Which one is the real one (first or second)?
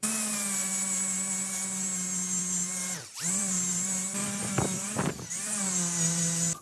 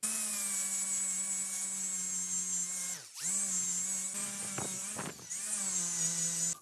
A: second